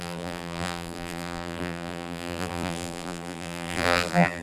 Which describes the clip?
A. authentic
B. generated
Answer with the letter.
B